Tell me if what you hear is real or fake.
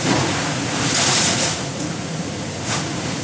fake